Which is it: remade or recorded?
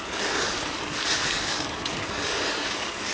remade